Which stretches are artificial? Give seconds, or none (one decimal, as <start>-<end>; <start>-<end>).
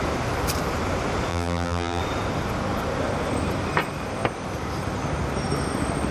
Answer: 1.3-2.0